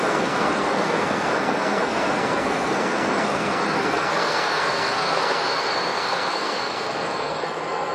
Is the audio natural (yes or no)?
no